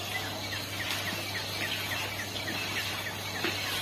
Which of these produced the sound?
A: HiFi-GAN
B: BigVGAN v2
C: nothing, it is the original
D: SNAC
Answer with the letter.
C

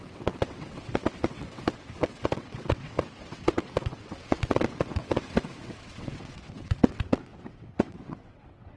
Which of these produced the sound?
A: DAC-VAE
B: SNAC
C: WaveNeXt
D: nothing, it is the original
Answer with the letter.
C